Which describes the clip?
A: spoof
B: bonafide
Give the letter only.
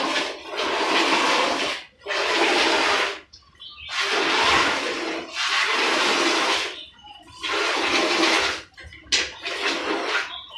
B